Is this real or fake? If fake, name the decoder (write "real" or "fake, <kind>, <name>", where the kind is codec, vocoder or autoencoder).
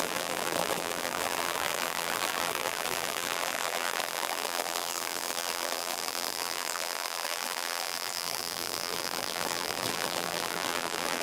fake, vocoder, BigVGAN v2